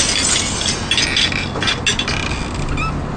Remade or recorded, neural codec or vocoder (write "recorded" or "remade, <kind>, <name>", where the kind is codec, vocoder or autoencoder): recorded